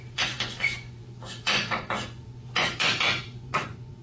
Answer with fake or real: fake